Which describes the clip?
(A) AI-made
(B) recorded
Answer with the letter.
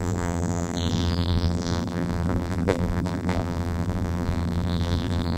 A